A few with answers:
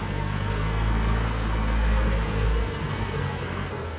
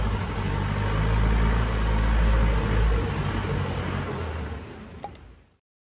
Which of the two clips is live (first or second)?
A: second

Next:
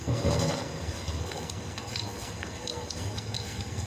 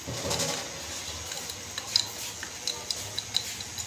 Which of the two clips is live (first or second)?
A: second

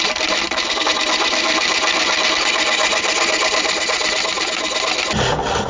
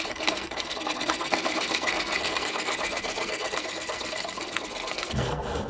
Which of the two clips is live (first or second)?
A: first